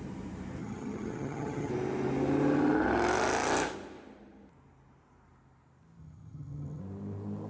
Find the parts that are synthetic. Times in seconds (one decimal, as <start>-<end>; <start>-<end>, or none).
0.6-1.7; 6.0-6.8